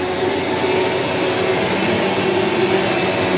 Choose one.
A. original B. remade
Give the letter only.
A